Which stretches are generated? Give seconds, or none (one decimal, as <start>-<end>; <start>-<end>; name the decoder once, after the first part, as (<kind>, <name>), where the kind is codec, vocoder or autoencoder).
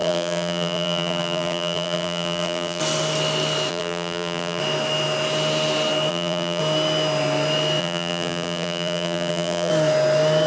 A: 0.0-2.8 (vocoder, BigVGAN v2); 3.7-4.6; 6.1-6.6; 7.8-9.7